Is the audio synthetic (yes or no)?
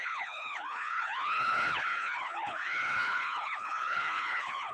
yes